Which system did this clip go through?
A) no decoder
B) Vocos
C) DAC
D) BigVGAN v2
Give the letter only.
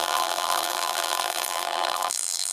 D